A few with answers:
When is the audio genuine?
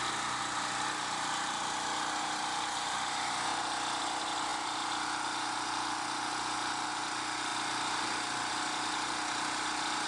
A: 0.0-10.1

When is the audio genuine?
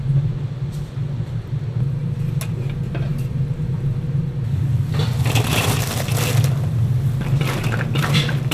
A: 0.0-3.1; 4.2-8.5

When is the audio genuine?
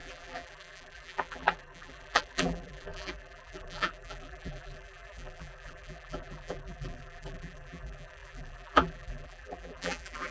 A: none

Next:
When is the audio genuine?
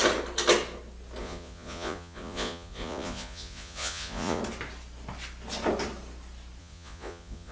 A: 0.0-1.2; 4.4-6.6